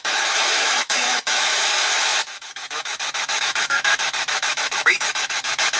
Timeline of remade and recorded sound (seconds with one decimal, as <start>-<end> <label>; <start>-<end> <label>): 0.0-5.8 remade